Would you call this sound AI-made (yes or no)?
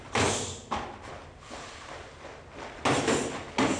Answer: no